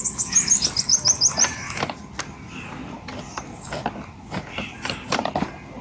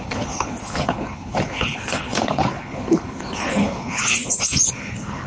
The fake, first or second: second